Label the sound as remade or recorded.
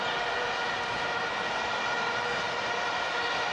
recorded